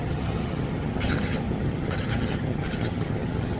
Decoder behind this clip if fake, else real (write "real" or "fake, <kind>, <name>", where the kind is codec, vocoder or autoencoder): fake, vocoder, HiFi-GAN